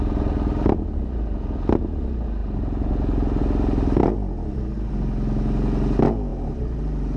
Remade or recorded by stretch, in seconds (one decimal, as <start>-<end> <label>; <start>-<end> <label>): 0.0-7.2 recorded